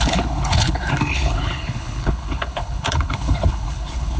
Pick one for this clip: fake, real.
fake